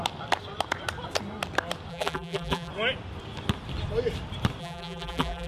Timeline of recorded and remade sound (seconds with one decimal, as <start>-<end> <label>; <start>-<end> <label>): 0.0-1.9 recorded; 1.9-2.7 remade; 2.7-4.6 recorded; 4.6-5.5 remade